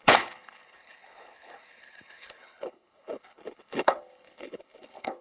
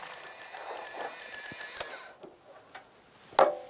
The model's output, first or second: first